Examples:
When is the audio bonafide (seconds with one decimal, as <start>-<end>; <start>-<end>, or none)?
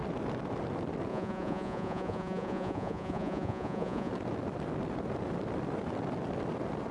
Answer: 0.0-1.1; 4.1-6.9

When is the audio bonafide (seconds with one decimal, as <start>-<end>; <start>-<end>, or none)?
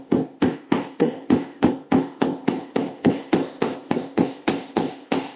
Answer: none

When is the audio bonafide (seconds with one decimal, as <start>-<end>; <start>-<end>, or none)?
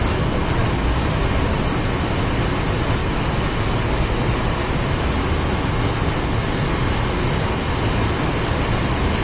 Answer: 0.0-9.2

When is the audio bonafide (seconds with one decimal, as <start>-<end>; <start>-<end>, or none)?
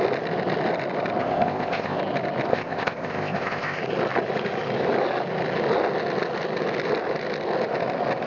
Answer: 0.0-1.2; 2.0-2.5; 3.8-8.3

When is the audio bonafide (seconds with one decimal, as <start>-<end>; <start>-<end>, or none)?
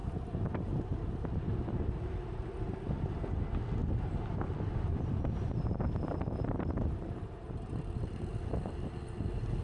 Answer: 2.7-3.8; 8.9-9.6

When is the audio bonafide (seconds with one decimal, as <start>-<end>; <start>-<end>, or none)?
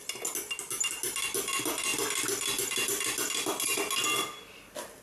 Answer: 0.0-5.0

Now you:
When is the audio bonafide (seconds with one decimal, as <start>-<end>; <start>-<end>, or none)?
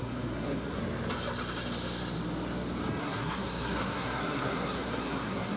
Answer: 0.8-3.0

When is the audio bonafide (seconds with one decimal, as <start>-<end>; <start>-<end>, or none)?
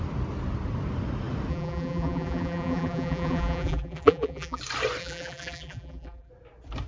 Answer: 0.0-1.5; 4.6-5.0; 6.3-6.9